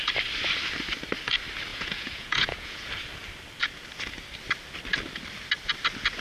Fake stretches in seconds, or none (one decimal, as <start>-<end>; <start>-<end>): 1.7-2.9